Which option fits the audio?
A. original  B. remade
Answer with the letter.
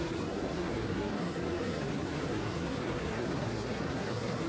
B